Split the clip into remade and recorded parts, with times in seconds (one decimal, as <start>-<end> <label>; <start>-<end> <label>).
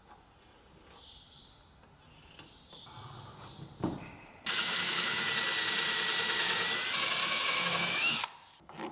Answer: 0.0-4.6 recorded; 4.6-5.2 remade; 5.2-7.2 recorded; 7.2-8.2 remade; 8.2-8.9 recorded